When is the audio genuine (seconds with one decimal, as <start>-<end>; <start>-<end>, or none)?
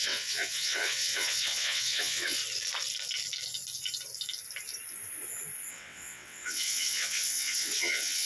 2.4-5.7